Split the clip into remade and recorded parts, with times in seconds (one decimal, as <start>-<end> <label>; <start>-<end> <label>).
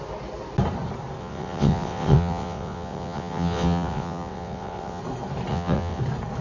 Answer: 0.0-1.2 recorded; 1.2-5.0 remade; 5.0-5.5 recorded; 5.5-6.0 remade; 6.0-6.4 recorded